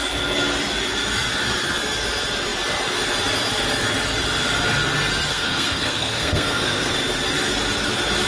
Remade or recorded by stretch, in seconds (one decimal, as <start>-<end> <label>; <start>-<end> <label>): 0.0-5.3 recorded; 5.3-6.9 remade; 6.9-8.3 recorded